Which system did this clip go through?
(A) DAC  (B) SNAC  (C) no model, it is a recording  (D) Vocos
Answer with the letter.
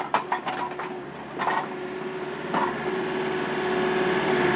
C